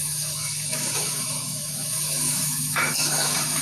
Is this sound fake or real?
fake